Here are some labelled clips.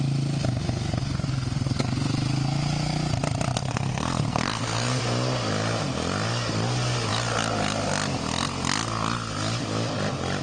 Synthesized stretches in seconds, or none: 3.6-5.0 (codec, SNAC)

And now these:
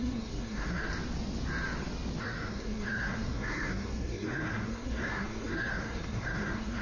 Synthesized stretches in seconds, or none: 0.0-0.9 (codec, SNAC); 2.2-6.8

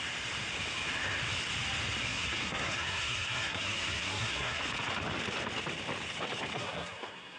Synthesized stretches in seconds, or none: 2.0-4.6 (codec, SNAC); 6.5-7.4

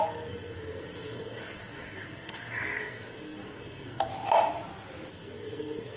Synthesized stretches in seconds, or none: 0.0-4.1 (codec, SNAC); 5.1-6.0

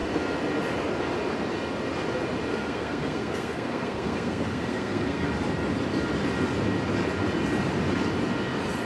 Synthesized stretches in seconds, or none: 2.5-5.3 (codec, SNAC)